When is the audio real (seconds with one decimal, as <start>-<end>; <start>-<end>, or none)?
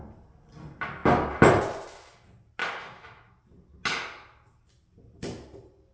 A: 0.0-2.6; 3.4-5.9